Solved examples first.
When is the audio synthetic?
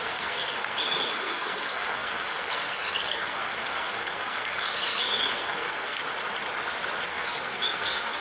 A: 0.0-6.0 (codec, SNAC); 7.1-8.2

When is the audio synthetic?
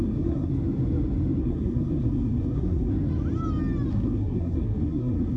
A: 0.0-0.5 (codec, SNAC); 1.4-2.9; 3.9-5.4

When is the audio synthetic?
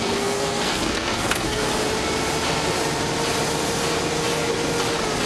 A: 0.0-1.7 (codec, SNAC)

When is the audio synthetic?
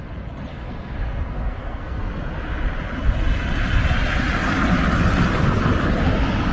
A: 0.5-2.0 (codec, SNAC)